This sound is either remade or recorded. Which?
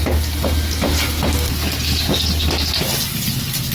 recorded